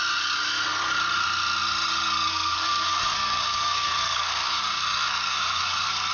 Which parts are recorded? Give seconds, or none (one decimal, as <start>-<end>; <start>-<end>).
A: 0.0-2.3

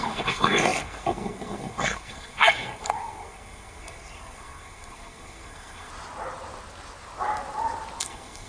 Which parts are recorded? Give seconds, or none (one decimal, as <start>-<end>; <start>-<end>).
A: 5.9-8.0

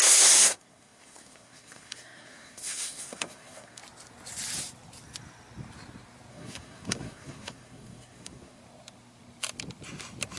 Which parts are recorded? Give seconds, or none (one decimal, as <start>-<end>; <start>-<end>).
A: 3.8-6.3; 8.6-10.4

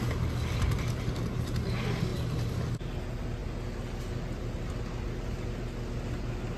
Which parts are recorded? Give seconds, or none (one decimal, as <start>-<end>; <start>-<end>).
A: 0.0-6.6

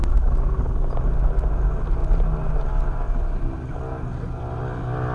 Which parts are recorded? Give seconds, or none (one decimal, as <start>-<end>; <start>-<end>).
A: 0.0-5.1

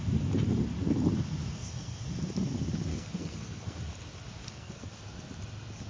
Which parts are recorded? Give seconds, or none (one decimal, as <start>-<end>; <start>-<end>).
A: 0.0-1.5; 2.0-2.9; 3.8-4.4; 5.0-5.9

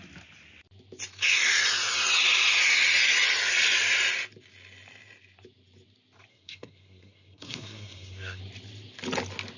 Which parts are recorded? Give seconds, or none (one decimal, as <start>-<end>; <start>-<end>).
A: 0.0-6.3; 8.4-9.6